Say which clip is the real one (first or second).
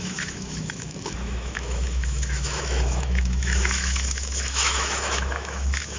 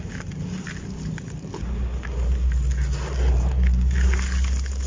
second